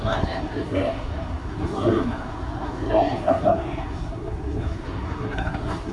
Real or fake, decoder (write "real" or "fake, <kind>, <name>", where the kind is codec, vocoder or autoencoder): fake, codec, SNAC